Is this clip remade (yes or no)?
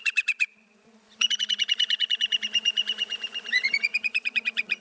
yes